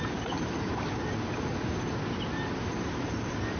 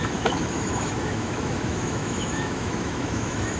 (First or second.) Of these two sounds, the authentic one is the first